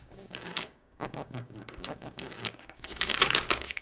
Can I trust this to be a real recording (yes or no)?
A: no